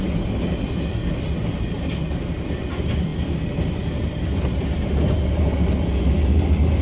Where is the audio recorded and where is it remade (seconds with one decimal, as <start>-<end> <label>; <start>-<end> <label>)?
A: 0.0-6.8 recorded